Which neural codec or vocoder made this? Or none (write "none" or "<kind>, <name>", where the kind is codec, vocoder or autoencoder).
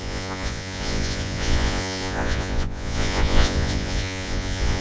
vocoder, Vocos